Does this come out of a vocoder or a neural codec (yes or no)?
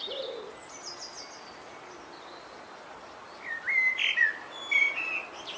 no